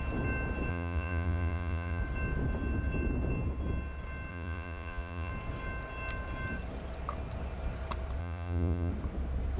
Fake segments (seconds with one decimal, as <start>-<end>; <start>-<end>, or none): 0.7-2.0; 4.3-5.3; 8.2-8.9